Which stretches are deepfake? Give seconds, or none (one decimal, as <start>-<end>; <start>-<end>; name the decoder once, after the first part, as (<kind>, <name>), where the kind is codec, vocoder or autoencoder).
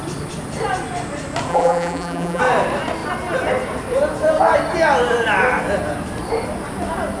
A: 1.5-2.4 (vocoder, BigVGAN v2)